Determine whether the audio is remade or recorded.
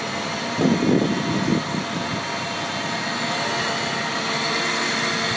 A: recorded